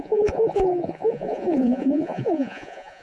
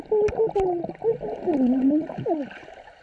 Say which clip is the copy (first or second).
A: first